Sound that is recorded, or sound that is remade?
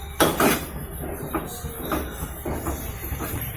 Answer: recorded